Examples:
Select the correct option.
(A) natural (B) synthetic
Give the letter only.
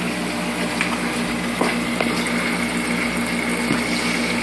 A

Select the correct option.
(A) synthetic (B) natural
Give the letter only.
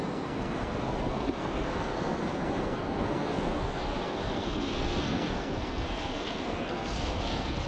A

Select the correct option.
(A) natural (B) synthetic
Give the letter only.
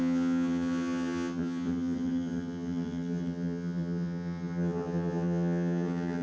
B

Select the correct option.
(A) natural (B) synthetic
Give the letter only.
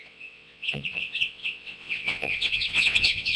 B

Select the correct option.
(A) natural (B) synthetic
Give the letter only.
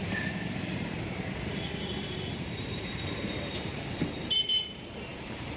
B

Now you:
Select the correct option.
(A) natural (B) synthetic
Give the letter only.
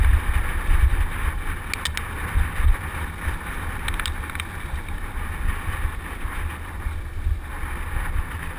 A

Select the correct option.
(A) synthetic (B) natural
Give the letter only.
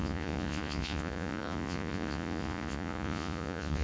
A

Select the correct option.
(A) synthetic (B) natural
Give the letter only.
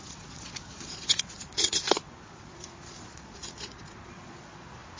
A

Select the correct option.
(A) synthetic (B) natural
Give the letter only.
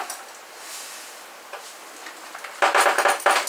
B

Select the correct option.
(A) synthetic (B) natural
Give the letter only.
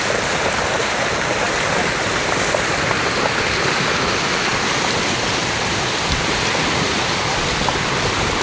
A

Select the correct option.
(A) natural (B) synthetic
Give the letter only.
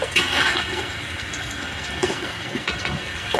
B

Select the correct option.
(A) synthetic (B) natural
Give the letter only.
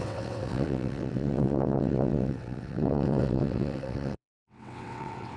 A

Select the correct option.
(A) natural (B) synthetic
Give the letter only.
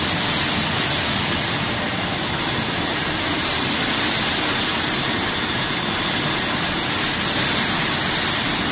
A